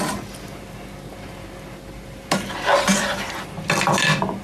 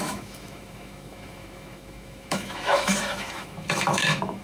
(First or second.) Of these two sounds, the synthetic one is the second